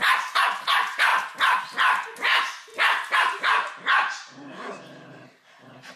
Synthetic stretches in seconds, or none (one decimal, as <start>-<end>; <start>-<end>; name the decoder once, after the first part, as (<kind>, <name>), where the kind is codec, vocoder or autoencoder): 0.0-1.1 (vocoder, BigVGAN v2); 1.6-2.7; 3.4-6.0